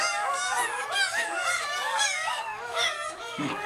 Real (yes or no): no